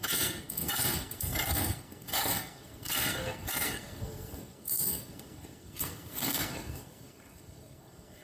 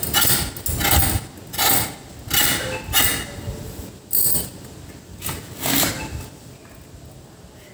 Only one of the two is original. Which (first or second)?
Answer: second